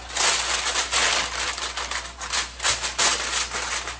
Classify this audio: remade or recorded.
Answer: recorded